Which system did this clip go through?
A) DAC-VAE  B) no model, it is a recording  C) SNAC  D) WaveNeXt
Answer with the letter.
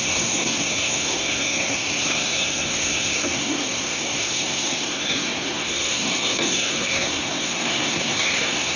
C